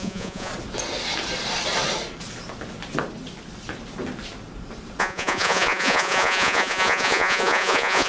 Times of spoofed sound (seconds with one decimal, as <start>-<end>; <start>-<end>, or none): 0.0-0.5; 5.0-8.1